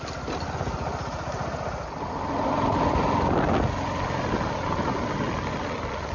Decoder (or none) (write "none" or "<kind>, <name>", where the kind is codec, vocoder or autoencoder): none